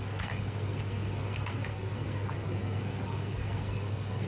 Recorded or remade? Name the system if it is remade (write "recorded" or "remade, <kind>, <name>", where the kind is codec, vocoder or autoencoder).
remade, codec, SNAC